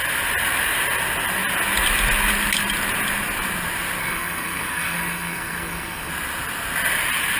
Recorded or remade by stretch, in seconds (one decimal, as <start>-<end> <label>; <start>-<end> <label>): 0.0-4.0 recorded; 4.0-6.1 remade; 6.1-7.4 recorded